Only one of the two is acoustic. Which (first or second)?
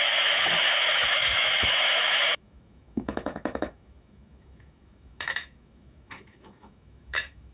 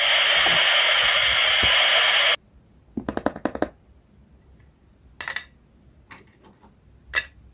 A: second